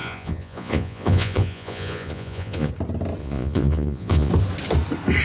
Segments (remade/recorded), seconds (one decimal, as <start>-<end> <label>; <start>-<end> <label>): 0.0-2.7 remade; 2.7-3.2 recorded; 3.2-4.3 remade; 4.3-5.2 recorded